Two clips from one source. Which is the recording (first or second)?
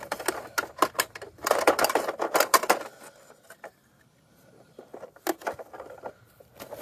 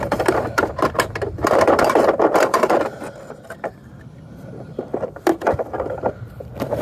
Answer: first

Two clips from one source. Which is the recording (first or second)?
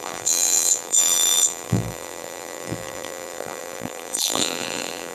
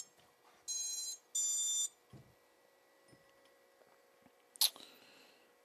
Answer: second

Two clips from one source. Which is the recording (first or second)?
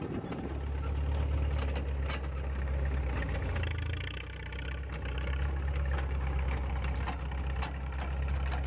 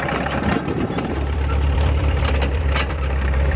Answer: first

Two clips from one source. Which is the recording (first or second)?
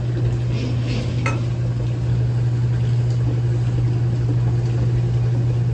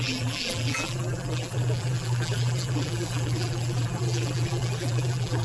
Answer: first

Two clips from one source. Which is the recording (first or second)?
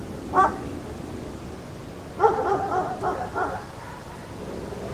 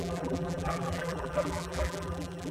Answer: first